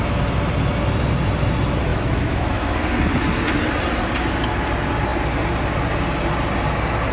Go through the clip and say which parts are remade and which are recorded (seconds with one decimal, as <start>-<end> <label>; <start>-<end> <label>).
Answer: 0.0-1.9 recorded; 1.9-2.8 remade; 2.8-7.1 recorded